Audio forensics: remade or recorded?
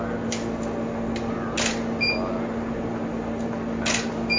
recorded